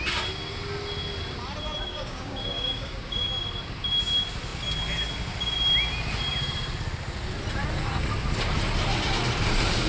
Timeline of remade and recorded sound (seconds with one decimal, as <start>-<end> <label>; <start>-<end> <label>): 0.0-1.9 recorded; 1.9-3.3 remade; 3.3-9.9 recorded